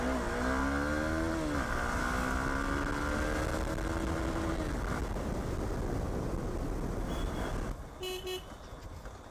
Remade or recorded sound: recorded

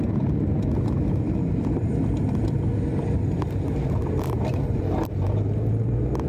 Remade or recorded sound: recorded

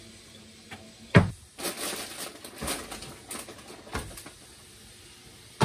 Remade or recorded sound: recorded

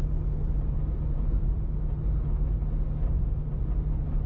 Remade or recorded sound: recorded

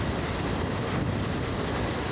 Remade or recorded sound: remade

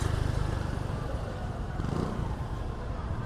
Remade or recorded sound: remade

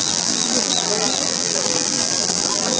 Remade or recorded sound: remade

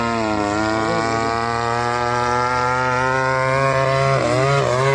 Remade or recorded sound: recorded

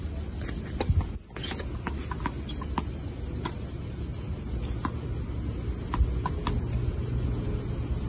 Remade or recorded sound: recorded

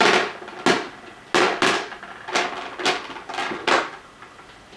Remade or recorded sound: recorded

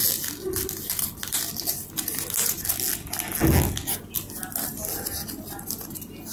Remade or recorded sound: recorded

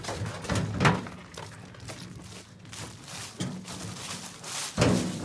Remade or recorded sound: recorded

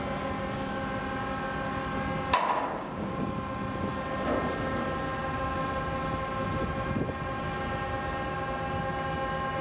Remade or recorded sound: recorded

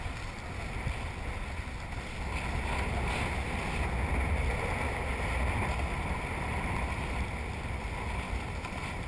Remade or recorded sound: recorded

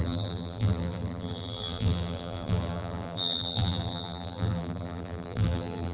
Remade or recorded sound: remade